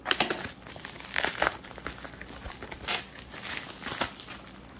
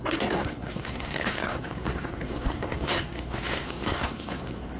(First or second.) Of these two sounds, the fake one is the second